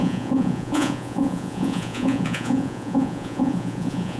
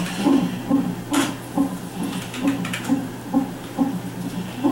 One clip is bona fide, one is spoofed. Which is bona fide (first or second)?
second